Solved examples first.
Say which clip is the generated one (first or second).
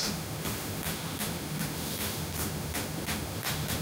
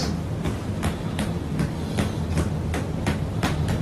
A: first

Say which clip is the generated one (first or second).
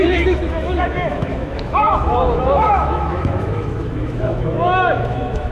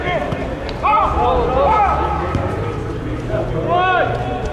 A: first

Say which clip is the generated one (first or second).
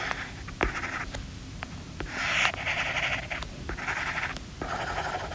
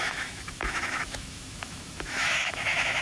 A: second